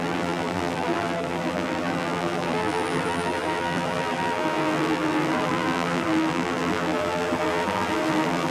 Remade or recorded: remade